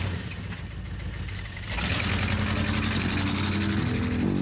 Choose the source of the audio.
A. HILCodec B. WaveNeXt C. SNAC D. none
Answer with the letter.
D